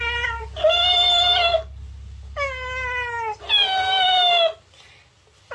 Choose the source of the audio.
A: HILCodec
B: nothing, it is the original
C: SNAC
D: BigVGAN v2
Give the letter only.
B